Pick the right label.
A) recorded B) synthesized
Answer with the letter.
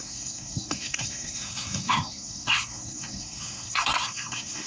B